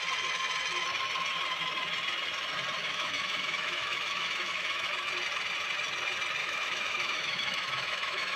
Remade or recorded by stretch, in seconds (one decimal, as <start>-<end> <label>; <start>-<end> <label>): 0.0-2.8 recorded; 2.8-4.9 remade; 4.9-6.4 recorded; 6.4-8.4 remade